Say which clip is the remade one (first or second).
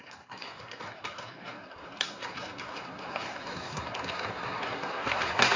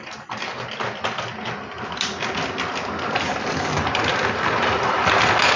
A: first